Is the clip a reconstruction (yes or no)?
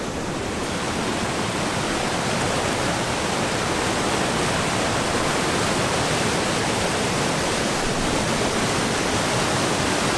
no